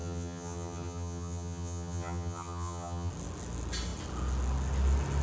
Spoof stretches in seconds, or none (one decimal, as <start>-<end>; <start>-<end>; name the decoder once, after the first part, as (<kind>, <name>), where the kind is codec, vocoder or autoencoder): 0.0-3.1 (vocoder, HiFi-GAN)